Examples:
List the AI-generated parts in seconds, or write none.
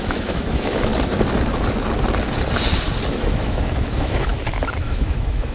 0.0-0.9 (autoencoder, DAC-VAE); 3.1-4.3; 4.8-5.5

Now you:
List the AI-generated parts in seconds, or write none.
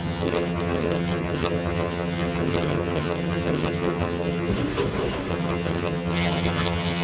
0.0-4.5 (vocoder, HiFi-GAN); 5.3-7.0